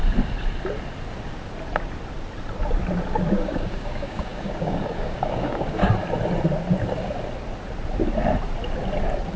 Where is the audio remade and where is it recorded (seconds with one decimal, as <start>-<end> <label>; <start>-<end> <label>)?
0.0-3.3 recorded; 3.3-5.8 remade; 5.8-9.4 recorded